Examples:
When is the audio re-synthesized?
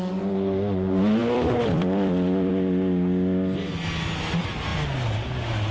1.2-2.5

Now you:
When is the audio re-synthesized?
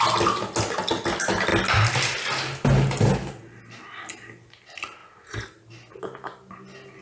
none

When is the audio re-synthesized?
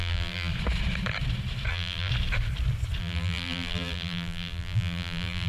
0.0-0.5; 1.7-2.1; 3.0-5.5